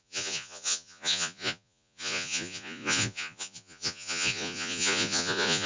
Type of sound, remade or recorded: remade